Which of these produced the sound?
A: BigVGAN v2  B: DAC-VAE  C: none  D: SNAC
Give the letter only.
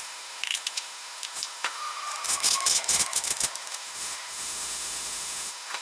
B